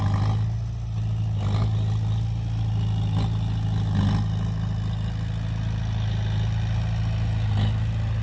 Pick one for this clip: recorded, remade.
recorded